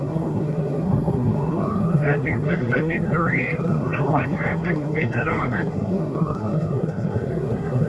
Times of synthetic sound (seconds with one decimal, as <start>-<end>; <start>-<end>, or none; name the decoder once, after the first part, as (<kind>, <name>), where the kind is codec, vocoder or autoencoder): 0.0-7.9 (codec, SNAC)